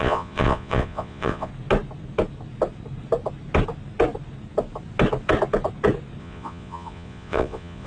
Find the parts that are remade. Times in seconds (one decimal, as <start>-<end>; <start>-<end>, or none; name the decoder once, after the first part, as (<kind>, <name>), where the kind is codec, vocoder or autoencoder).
0.0-1.5 (vocoder, Vocos); 6.2-7.9